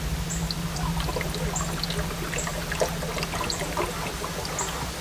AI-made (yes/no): no